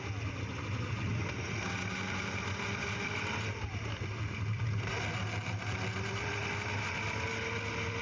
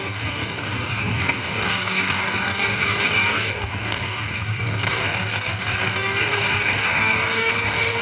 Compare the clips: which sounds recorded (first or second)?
first